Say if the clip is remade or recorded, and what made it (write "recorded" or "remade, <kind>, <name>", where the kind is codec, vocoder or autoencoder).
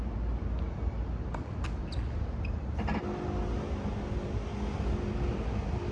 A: recorded